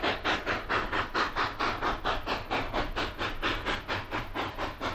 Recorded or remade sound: recorded